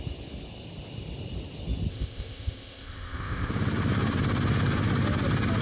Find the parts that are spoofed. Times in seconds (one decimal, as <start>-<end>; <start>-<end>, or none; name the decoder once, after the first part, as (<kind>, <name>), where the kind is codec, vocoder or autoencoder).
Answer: 1.9-3.5 (codec, ZipCodec)